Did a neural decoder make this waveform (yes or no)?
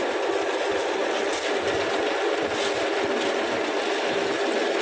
no